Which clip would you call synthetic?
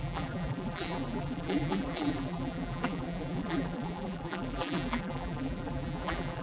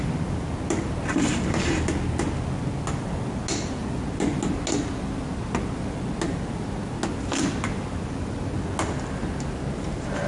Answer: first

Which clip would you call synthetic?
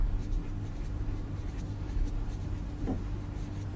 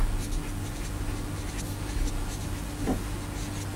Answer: first